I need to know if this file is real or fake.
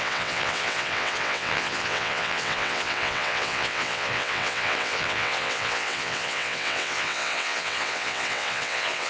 fake